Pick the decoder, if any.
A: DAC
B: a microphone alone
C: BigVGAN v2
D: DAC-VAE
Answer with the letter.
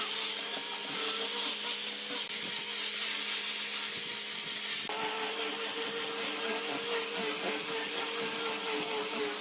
B